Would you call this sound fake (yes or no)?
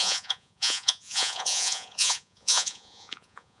yes